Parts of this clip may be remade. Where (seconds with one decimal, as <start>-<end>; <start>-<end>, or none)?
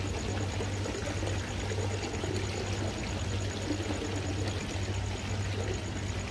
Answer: none